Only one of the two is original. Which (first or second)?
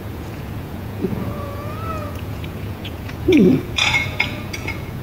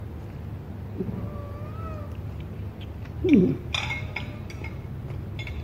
second